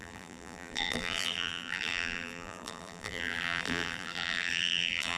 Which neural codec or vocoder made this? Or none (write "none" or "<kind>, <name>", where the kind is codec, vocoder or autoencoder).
vocoder, BigVGAN v2